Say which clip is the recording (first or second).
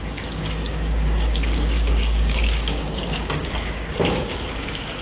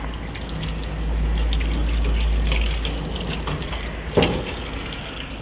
second